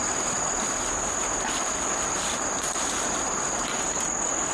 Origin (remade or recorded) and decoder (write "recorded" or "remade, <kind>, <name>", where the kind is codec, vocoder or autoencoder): recorded